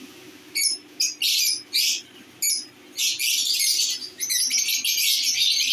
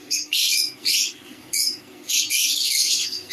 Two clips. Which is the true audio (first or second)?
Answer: first